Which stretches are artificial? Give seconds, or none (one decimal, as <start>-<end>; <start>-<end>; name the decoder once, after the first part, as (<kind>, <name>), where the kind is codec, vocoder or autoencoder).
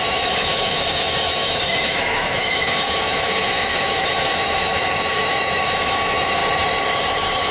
0.0-6.4 (autoencoder, DAC-VAE); 7.0-7.5